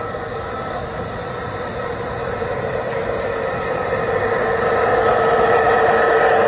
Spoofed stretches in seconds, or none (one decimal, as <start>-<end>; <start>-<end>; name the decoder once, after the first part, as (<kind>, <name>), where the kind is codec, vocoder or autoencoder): 0.9-2.9 (vocoder, BigVGAN v2)